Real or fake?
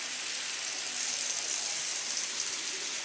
real